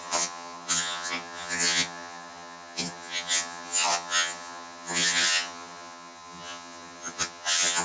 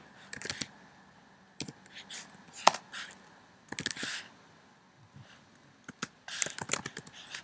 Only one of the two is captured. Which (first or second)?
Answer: second